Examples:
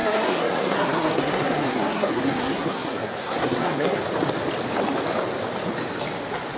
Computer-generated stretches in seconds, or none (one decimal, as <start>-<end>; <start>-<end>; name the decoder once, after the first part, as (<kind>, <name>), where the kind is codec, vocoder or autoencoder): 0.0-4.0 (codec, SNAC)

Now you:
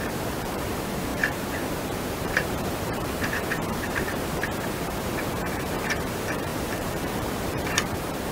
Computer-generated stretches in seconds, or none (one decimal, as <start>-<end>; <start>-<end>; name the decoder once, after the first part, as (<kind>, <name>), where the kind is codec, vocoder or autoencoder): 0.0-8.3 (vocoder, BigVGAN v2)

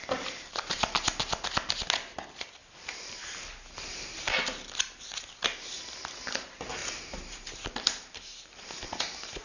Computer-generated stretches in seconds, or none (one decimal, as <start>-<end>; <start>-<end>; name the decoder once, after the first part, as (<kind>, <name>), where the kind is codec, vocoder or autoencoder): 2.6-3.2 (vocoder, BigVGAN v2); 6.8-8.7

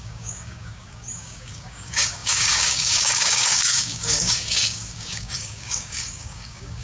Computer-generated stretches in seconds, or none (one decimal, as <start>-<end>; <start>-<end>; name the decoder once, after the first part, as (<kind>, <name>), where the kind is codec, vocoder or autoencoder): 0.0-6.8 (codec, DAC)